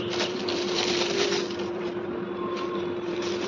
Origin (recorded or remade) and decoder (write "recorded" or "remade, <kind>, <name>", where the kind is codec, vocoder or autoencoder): remade, vocoder, BigVGAN v2